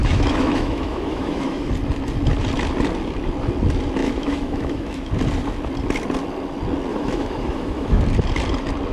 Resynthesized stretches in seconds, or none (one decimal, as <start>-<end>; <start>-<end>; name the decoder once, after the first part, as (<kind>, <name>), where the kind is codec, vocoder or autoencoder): 0.0-1.7 (autoencoder, DAC-VAE); 4.0-5.1; 6.9-8.0